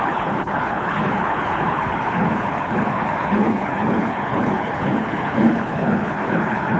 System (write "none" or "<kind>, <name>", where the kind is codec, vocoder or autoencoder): codec, HILCodec